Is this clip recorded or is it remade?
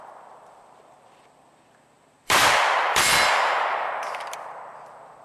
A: remade